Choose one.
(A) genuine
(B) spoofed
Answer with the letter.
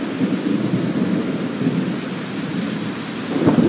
A